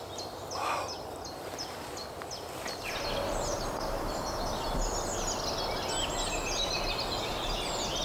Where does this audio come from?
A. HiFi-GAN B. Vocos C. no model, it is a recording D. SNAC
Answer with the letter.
C